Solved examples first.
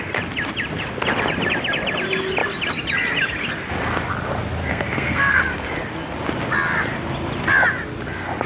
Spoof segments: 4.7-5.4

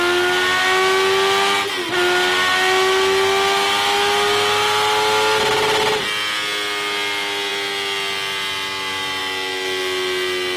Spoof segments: none

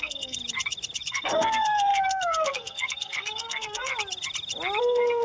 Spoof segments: 0.0-0.4; 1.1-3.9; 4.8-5.2